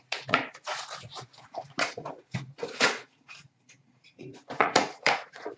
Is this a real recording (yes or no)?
no